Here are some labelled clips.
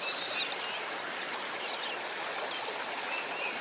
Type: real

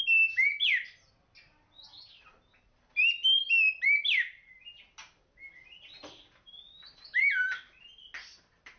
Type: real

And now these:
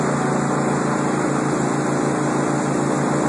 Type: real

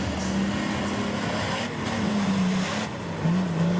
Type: real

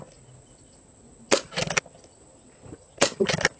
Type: real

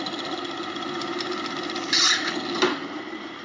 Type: real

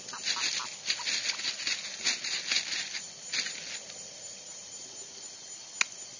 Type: real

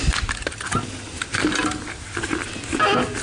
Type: real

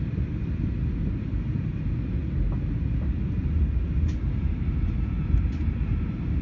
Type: real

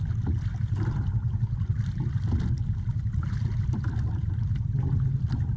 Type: real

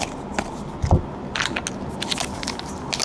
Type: real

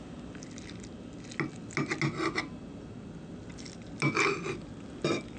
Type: real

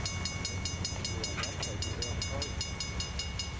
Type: real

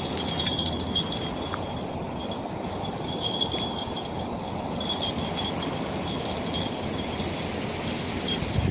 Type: real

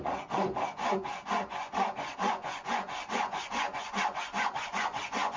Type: fake